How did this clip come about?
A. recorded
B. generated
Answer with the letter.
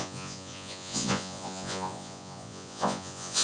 B